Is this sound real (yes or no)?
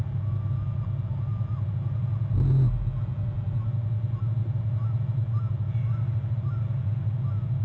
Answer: yes